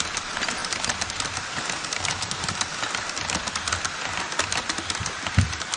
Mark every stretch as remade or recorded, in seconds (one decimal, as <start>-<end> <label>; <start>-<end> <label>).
0.0-2.7 remade; 2.7-5.0 recorded; 5.0-5.8 remade